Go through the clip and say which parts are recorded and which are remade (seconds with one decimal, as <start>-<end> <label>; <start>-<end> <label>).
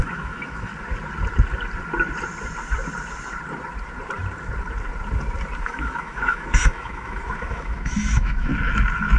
0.0-0.7 remade; 0.7-5.6 recorded; 5.6-8.5 remade; 8.5-9.2 recorded